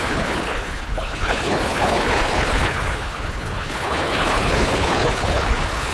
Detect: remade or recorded remade